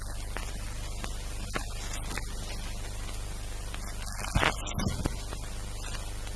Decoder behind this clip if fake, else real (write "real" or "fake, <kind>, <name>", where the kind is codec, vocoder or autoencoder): real